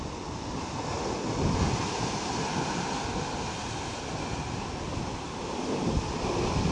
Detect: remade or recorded recorded